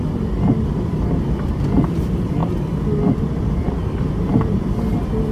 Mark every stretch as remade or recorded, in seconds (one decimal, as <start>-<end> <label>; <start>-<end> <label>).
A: 0.0-2.4 remade; 2.4-3.2 recorded; 3.2-5.3 remade